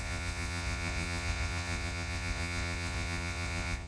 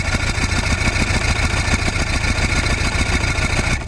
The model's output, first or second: first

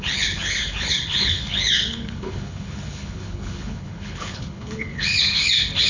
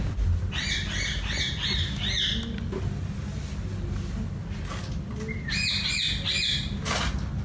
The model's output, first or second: first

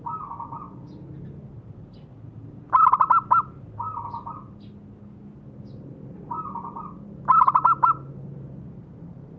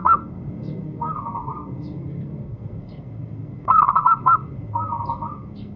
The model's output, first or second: second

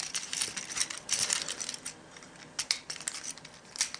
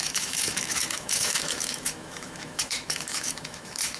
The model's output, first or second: second